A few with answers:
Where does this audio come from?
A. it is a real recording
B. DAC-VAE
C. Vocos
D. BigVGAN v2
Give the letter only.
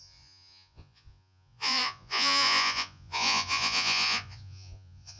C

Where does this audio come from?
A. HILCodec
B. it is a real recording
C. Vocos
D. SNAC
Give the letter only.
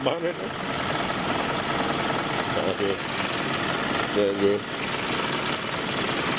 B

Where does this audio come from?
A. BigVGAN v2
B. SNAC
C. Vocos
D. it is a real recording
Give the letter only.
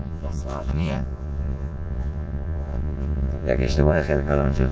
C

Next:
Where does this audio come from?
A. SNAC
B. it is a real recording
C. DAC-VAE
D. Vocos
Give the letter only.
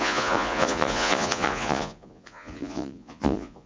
D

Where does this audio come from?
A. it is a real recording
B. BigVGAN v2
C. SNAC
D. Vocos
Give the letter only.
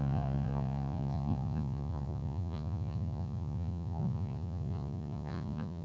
D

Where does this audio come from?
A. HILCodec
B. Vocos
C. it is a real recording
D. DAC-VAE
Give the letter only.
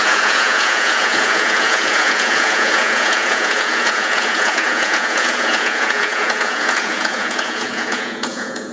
B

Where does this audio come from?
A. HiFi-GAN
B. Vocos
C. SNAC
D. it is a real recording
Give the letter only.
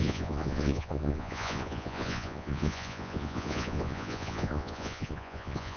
B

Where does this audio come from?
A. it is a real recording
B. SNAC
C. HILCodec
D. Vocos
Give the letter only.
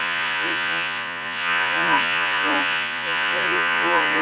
D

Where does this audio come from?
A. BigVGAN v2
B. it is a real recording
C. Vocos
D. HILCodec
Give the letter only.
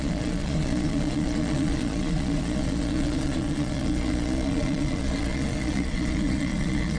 C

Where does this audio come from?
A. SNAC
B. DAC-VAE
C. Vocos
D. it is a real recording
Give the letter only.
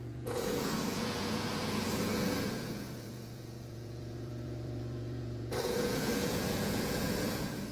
C